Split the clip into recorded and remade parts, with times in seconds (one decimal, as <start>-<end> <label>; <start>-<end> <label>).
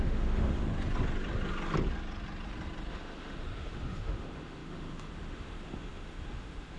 0.0-0.6 remade; 0.6-2.9 recorded; 2.9-6.8 remade